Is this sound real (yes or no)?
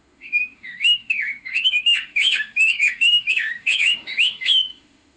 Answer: no